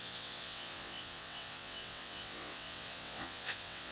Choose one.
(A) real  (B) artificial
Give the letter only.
B